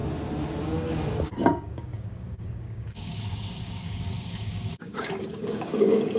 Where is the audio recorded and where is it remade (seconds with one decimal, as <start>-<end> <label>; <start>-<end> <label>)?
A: 0.0-0.6 recorded; 0.6-6.2 remade